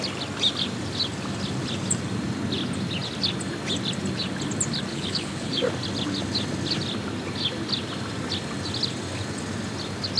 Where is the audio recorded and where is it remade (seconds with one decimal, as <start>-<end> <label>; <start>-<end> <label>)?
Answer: 0.0-4.9 recorded; 4.9-5.5 remade; 5.5-10.2 recorded